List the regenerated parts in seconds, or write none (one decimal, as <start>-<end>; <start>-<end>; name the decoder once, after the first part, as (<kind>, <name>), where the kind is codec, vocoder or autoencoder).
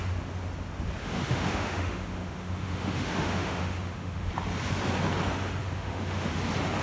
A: 1.0-4.3 (autoencoder, DAC-VAE); 5.6-6.3